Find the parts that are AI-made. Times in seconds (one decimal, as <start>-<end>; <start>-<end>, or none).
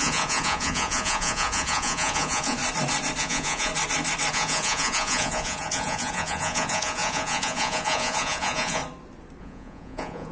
0.0-2.6; 3.2-3.7; 4.3-8.8; 9.4-10.3